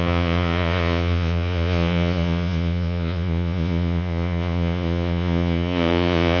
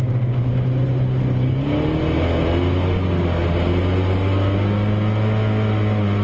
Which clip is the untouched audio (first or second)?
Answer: second